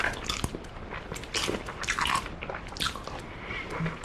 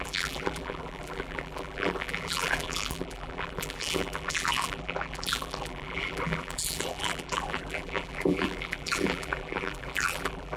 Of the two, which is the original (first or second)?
first